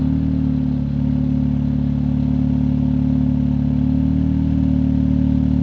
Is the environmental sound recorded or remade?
recorded